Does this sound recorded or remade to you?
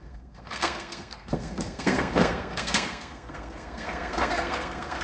remade